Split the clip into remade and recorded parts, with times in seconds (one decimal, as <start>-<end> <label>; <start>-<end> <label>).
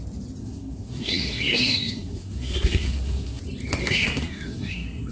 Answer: 0.0-0.4 recorded; 0.4-3.4 remade; 3.4-3.8 recorded; 3.8-5.1 remade